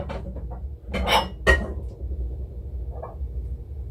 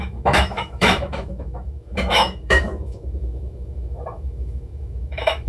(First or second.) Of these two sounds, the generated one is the second